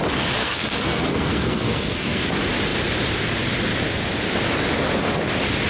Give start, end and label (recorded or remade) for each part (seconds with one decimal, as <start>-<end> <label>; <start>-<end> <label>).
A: 0.0-0.4 recorded; 0.4-2.3 remade; 2.3-5.7 recorded

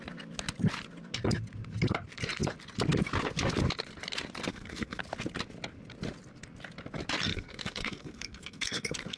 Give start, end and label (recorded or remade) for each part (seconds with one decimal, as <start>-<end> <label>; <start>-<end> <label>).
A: 0.0-4.5 recorded; 4.5-5.0 remade; 5.0-7.3 recorded; 7.3-9.2 remade

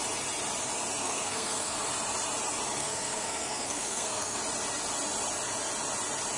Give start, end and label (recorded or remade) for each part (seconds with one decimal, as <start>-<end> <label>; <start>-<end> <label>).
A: 0.0-1.0 recorded; 1.0-1.8 remade; 1.8-2.8 recorded; 2.8-4.4 remade; 4.4-6.4 recorded

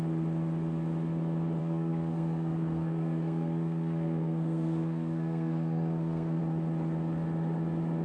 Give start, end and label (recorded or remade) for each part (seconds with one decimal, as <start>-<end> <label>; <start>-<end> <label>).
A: 0.0-1.6 recorded; 1.6-6.4 remade; 6.4-8.0 recorded

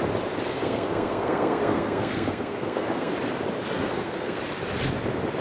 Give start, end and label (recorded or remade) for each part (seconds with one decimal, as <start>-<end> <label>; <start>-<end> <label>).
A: 0.0-0.5 recorded; 0.5-3.1 remade; 3.1-3.8 recorded; 3.8-4.4 remade; 4.4-5.4 recorded

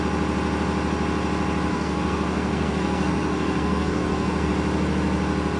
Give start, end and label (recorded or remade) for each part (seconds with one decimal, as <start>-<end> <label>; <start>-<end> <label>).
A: 0.0-1.7 recorded; 1.7-4.5 remade; 4.5-5.6 recorded

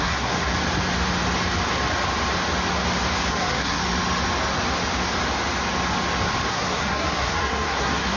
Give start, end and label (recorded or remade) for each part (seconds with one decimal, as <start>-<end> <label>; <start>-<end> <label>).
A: 0.0-0.5 remade; 0.5-3.3 recorded; 3.3-3.8 remade; 3.8-6.5 recorded; 6.5-8.2 remade